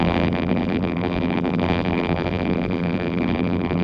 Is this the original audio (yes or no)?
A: no